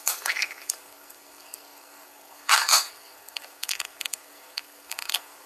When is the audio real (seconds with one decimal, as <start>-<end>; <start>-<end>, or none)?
none